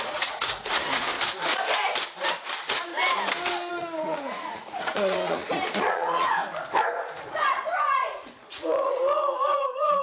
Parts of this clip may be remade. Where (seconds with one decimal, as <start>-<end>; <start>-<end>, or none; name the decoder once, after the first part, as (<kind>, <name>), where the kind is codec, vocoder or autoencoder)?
0.0-1.1 (vocoder, Vocos); 2.2-2.9; 3.7-6.4; 7.0-10.0